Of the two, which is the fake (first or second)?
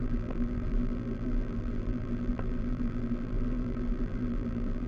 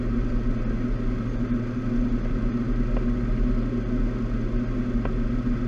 first